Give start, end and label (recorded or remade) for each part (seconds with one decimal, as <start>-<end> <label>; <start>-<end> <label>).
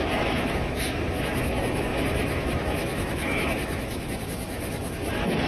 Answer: 0.0-5.5 remade